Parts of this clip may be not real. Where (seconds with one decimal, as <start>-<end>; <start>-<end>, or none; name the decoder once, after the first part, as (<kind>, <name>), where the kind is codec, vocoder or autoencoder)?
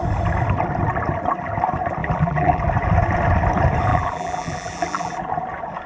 2.0-2.6 (vocoder, BigVGAN v2); 3.9-5.1